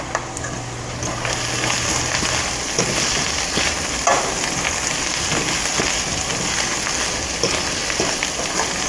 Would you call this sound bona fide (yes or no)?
yes